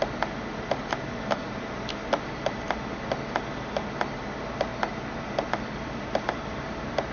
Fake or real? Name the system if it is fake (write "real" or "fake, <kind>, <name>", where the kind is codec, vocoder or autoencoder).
real